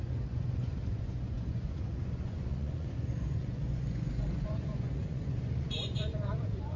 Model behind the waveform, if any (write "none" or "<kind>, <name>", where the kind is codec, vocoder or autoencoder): vocoder, Vocos